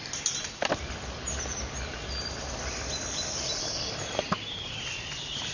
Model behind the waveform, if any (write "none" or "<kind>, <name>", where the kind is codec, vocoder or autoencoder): none